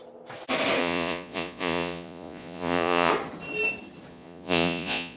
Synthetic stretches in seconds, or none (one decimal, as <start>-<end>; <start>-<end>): 0.8-3.1; 4.1-5.2